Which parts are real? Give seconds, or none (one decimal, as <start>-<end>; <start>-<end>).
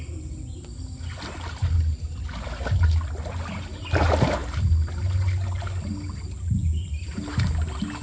0.0-8.0